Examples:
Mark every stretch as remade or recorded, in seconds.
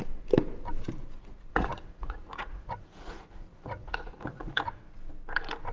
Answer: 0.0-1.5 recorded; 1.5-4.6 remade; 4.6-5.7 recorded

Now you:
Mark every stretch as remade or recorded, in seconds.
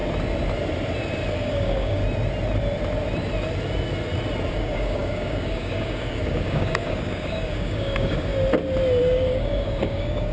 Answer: 0.0-1.3 recorded; 1.3-2.0 remade; 2.0-4.5 recorded; 4.5-8.3 remade; 8.3-9.0 recorded; 9.0-10.3 remade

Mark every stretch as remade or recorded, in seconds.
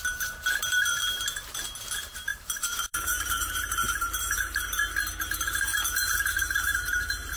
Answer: 0.0-0.7 recorded; 0.7-1.4 remade; 1.4-2.3 recorded; 2.3-4.6 remade; 4.6-5.7 recorded; 5.7-7.4 remade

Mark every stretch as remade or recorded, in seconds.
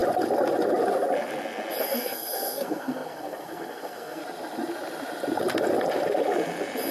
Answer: 0.0-1.8 recorded; 1.8-4.2 remade; 4.2-6.9 recorded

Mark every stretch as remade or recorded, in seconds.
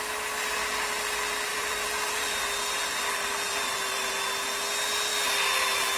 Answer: 0.0-1.5 recorded; 1.5-2.4 remade; 2.4-3.5 recorded; 3.5-4.1 remade; 4.1-6.0 recorded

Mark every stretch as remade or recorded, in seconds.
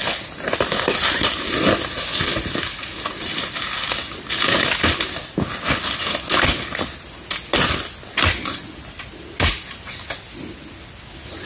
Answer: 0.0-11.5 recorded